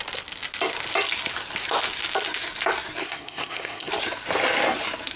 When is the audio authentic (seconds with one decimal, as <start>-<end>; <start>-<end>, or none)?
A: 0.0-3.0; 3.9-5.2